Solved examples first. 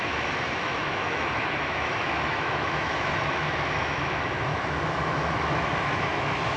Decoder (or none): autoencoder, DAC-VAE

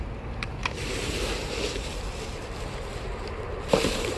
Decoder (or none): vocoder, BigVGAN v2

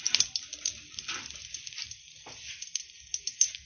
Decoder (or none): none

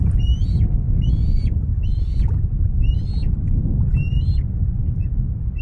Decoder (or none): none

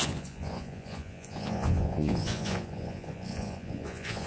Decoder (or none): vocoder, Vocos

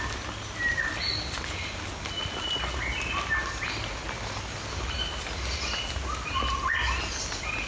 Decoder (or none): none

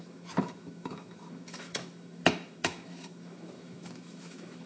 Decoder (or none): autoencoder, DAC-VAE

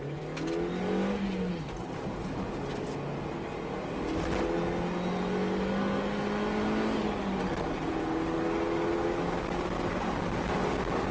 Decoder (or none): none